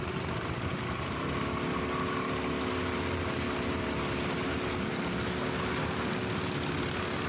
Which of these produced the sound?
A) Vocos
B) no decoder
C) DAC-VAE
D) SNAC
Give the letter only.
B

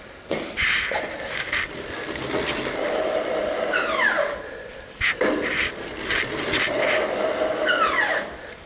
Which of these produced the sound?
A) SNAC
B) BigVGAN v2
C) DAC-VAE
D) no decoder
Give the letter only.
D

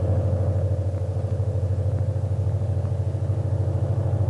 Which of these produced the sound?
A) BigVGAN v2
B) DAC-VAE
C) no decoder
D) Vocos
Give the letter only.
C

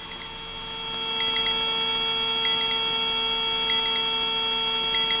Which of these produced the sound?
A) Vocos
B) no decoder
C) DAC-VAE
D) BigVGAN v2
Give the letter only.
B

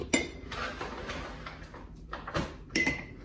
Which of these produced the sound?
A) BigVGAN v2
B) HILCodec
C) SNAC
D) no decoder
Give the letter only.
D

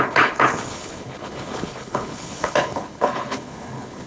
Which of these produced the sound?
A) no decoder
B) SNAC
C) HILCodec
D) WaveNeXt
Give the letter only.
C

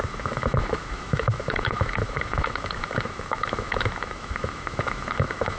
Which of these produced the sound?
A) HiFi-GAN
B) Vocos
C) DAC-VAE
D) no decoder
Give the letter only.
C